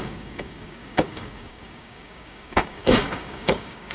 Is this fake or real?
fake